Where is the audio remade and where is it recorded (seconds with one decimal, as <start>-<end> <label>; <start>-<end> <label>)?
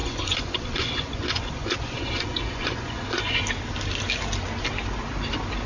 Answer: 0.0-3.4 remade; 3.4-5.7 recorded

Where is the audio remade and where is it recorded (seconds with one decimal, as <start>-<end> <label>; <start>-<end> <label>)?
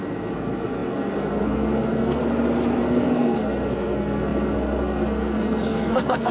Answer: 0.0-2.2 remade; 2.2-2.8 recorded; 2.8-6.3 remade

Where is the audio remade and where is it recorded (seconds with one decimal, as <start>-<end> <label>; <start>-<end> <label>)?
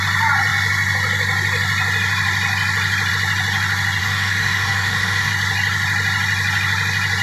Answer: 0.0-4.0 recorded; 4.0-5.3 remade; 5.3-7.2 recorded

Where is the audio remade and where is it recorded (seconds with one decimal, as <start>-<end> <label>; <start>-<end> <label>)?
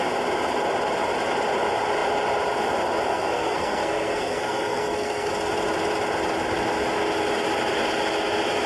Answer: 0.0-3.1 recorded; 3.1-5.3 remade; 5.3-8.7 recorded